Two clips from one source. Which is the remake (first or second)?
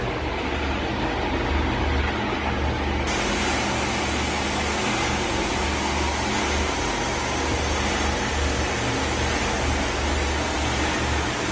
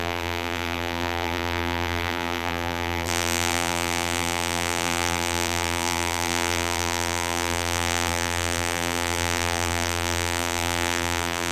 second